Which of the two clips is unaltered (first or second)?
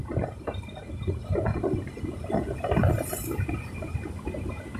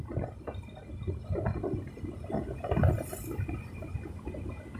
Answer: second